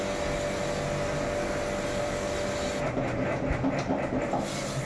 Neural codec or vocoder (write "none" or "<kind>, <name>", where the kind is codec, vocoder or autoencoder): none